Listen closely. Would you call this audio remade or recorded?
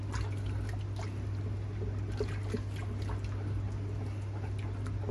recorded